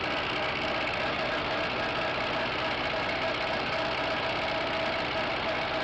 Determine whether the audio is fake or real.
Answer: real